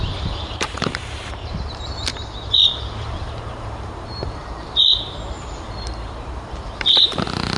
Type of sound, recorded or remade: remade